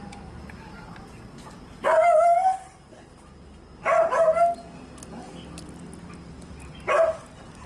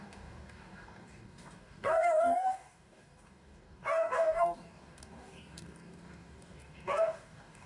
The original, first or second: first